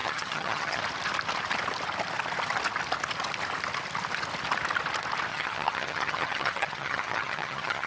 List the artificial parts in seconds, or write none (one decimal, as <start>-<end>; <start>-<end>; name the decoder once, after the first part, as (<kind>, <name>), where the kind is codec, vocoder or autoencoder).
0.0-0.8 (vocoder, HiFi-GAN); 5.3-7.9